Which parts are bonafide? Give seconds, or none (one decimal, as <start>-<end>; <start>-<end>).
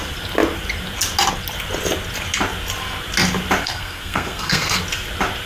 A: 0.0-3.6; 4.8-5.5